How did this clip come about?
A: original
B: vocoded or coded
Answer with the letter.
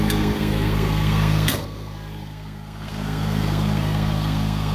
B